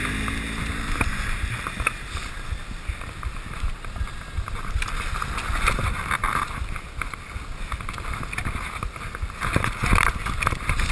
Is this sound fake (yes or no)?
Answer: no